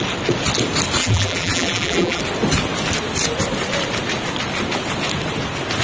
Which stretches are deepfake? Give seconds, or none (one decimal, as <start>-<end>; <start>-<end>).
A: 1.0-2.2